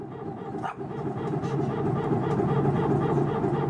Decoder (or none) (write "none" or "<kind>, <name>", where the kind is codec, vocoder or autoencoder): none